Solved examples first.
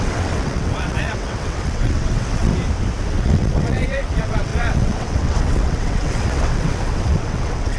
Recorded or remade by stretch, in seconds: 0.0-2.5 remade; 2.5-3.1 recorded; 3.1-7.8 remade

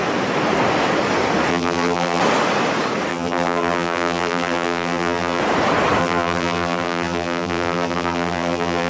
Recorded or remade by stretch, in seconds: 0.0-1.5 recorded; 1.5-2.2 remade; 2.2-3.1 recorded; 3.1-5.4 remade; 5.4-6.0 recorded; 6.0-8.9 remade

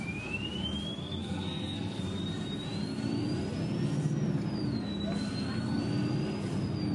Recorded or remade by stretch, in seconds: 0.0-1.0 recorded; 1.0-2.0 remade; 2.0-6.9 recorded